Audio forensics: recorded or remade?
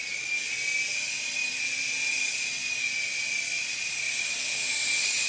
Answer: recorded